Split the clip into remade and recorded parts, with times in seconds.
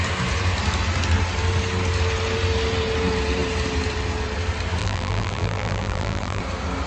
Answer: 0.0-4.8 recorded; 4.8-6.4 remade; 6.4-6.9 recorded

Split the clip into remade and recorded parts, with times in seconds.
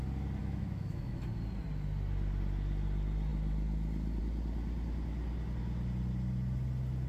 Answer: 0.0-0.4 recorded; 0.4-1.2 remade; 1.2-7.1 recorded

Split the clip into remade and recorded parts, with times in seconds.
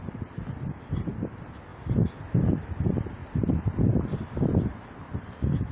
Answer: 0.0-5.7 recorded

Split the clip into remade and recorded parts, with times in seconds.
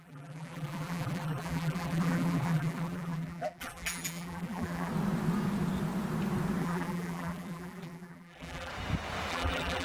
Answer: 0.0-4.9 remade; 4.9-6.6 recorded; 6.6-8.7 remade; 8.7-9.3 recorded; 9.3-9.8 remade